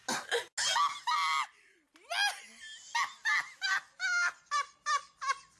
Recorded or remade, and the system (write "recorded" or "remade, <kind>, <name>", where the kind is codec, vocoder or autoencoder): recorded